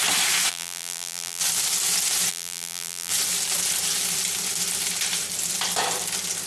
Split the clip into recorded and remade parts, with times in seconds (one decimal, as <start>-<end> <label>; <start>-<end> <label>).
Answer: 0.0-0.5 recorded; 0.5-1.4 remade; 1.4-2.3 recorded; 2.3-3.1 remade; 3.1-6.5 recorded